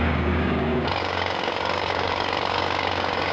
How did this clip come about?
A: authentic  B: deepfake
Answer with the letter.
B